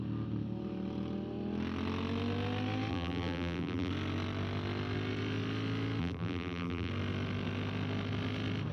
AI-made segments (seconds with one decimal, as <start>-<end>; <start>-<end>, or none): 2.9-3.9; 6.0-6.9